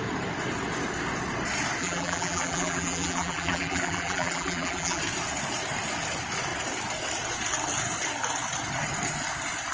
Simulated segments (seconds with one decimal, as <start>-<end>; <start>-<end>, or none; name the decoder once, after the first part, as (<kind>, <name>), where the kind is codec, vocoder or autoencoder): 1.8-5.0 (vocoder, BigVGAN v2)